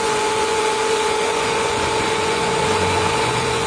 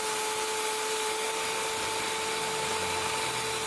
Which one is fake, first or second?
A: first